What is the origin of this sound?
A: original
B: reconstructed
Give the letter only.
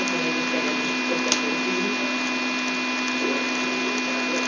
A